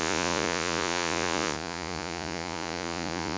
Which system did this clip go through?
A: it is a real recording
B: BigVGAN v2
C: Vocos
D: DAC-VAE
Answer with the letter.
C